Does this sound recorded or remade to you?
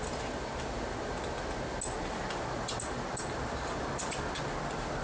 recorded